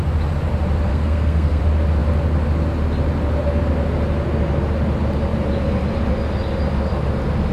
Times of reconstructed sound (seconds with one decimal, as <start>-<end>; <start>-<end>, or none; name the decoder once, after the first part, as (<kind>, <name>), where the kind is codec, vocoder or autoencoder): 0.9-1.6 (codec, SNAC)